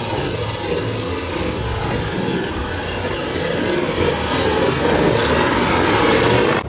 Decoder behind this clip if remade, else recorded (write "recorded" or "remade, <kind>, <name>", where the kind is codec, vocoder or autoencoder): recorded